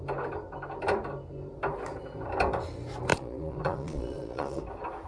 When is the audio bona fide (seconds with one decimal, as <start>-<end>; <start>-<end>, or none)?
0.0-3.1; 4.6-5.1